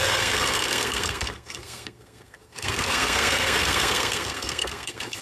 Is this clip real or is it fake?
fake